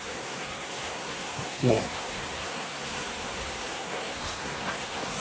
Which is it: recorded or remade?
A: remade